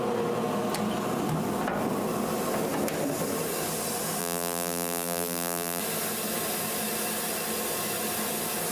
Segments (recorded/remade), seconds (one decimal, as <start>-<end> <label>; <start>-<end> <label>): 0.0-4.2 recorded; 4.2-5.8 remade; 5.8-8.7 recorded